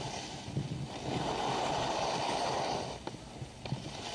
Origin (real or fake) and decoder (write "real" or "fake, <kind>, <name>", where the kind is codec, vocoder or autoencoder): real